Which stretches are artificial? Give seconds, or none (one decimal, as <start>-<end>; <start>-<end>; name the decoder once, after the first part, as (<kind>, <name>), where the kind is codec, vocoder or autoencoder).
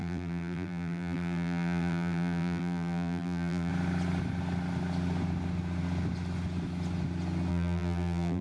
0.0-3.7 (vocoder, BigVGAN v2); 7.5-8.4